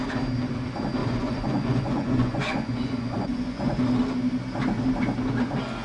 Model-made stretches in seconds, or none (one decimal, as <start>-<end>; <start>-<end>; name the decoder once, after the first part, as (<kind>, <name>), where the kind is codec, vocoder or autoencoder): 1.0-3.8 (vocoder, Vocos)